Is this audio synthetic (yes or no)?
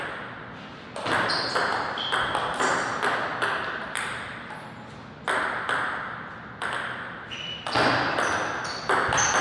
no